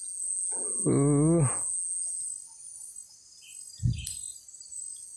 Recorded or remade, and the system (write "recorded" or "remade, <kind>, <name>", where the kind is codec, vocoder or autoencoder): recorded